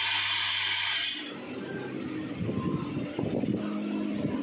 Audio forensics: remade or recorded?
recorded